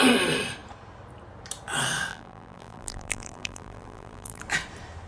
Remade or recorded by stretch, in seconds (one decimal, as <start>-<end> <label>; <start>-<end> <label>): 0.0-2.1 recorded; 2.1-4.4 remade; 4.4-5.1 recorded